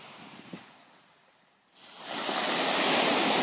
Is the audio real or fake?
fake